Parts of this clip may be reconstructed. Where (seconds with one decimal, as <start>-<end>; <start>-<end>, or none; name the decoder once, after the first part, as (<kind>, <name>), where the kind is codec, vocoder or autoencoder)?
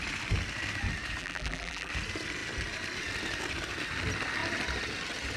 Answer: 1.2-1.9 (vocoder, BigVGAN v2)